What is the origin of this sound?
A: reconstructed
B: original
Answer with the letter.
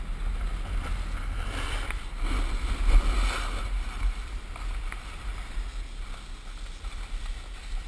B